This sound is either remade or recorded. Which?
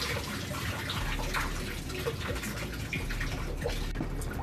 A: recorded